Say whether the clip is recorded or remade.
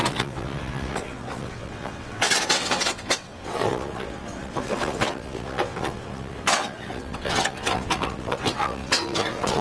remade